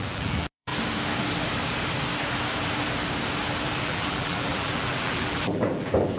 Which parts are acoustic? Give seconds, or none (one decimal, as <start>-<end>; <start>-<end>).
0.7-3.8